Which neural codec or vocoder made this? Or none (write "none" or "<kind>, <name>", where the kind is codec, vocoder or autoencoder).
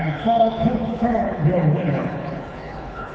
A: codec, HILCodec